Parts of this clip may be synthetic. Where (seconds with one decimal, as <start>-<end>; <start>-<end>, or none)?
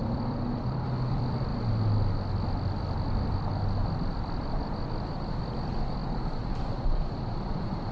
0.0-1.5; 4.1-7.9